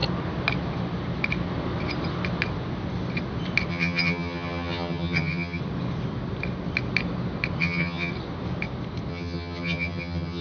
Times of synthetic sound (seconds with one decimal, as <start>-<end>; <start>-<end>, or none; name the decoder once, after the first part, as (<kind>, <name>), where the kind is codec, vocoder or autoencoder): 3.7-5.6 (vocoder, HiFi-GAN); 7.6-8.1; 9.1-10.4